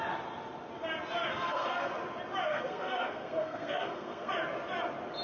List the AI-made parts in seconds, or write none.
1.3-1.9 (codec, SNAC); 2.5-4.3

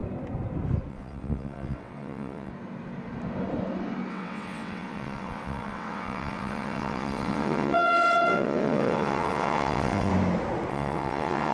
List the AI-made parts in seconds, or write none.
0.9-2.5 (vocoder, WaveNeXt); 4.1-10.1; 10.7-11.5

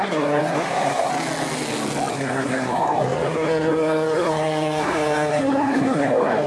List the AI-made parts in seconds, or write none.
0.0-1.1 (codec, SNAC); 2.1-6.5

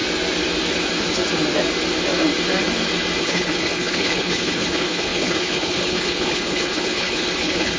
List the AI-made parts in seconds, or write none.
3.2-7.8 (codec, HILCodec)

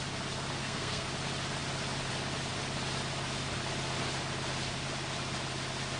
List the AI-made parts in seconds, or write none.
0.6-1.1 (codec, SNAC)

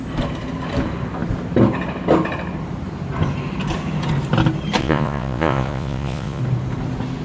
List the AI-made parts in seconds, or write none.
4.8-6.4 (vocoder, Vocos)

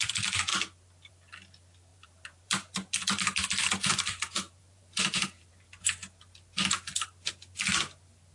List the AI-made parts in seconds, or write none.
1.9-4.0 (vocoder, BigVGAN v2); 4.6-5.5